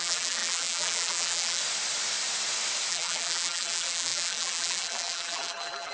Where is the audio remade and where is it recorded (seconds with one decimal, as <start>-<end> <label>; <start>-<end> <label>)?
0.0-1.6 remade; 1.6-2.9 recorded; 2.9-5.9 remade